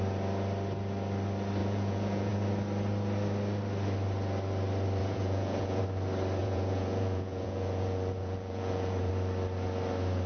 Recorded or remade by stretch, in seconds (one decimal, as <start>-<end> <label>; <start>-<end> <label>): 0.0-1.6 recorded; 1.6-2.3 remade; 2.3-5.0 recorded; 5.0-5.8 remade; 5.8-6.4 recorded; 6.4-9.1 remade; 9.1-10.3 recorded